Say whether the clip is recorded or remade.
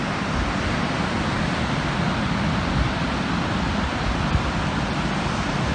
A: recorded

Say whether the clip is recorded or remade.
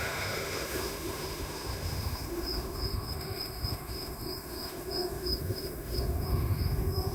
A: remade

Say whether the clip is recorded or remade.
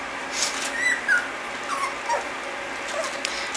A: recorded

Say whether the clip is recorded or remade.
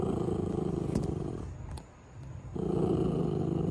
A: recorded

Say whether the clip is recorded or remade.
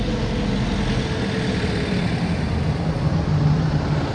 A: recorded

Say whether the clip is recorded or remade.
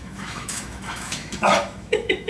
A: remade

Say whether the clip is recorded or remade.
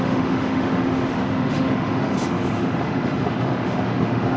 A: remade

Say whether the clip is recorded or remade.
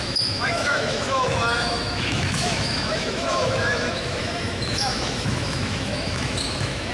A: remade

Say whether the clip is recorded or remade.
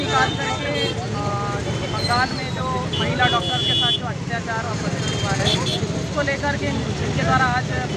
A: recorded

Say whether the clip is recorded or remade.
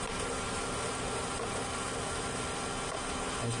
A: recorded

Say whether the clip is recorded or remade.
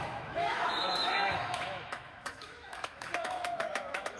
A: remade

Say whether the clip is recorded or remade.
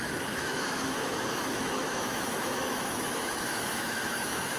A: remade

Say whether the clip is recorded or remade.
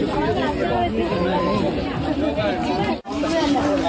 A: recorded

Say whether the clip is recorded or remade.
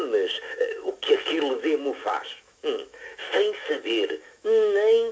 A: remade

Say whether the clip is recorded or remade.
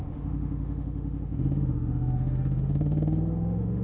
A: remade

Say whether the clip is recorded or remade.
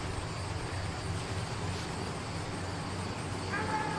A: recorded